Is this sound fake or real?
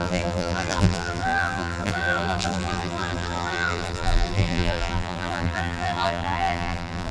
fake